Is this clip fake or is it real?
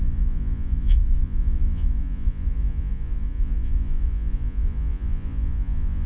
fake